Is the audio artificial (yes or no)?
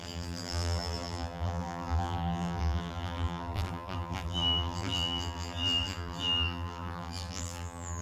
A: yes